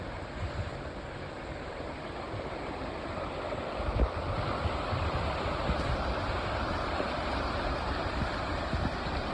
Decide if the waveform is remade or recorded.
recorded